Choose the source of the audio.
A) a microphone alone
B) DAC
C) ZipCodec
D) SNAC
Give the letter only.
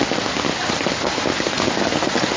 A